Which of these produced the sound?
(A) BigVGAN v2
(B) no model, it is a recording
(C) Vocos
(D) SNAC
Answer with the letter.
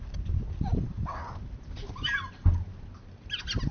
B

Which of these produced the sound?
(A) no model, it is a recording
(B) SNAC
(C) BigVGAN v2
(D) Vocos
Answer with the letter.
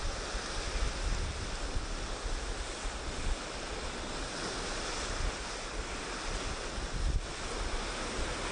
A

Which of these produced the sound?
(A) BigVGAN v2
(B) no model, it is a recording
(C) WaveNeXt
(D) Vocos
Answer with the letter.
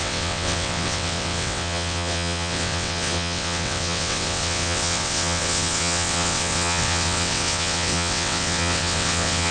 C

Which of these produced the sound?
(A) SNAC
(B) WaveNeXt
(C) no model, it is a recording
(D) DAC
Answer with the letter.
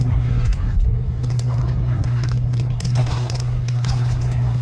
A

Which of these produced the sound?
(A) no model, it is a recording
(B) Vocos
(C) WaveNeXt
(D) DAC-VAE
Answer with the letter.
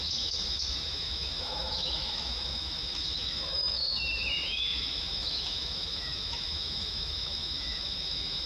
D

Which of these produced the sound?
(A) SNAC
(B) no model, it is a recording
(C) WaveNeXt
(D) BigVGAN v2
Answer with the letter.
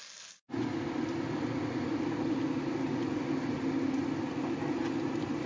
B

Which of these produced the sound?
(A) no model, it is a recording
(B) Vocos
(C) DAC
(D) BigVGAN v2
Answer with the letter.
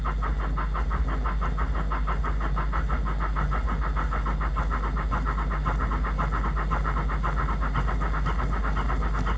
A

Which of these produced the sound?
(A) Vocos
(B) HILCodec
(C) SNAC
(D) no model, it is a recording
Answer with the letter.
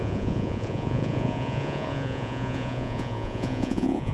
A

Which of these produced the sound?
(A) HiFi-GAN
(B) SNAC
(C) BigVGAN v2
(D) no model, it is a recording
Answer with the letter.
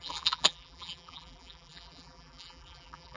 C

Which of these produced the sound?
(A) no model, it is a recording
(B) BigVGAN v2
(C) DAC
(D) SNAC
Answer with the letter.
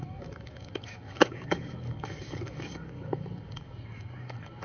C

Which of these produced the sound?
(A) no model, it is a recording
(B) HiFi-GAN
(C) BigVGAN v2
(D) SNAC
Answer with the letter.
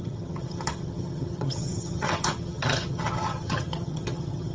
B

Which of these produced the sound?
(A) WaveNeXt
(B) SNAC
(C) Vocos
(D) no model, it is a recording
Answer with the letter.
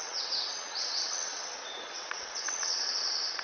A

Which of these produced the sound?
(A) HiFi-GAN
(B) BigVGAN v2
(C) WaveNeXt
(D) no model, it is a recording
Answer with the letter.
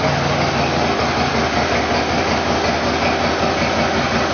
D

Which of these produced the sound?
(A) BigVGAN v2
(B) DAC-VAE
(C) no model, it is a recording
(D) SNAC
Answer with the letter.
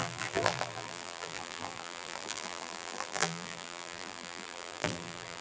A